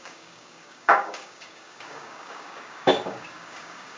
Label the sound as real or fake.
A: fake